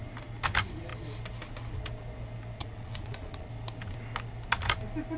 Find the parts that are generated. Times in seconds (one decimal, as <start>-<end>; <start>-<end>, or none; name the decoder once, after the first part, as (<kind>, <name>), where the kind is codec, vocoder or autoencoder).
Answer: 2.6-3.5 (vocoder, Vocos)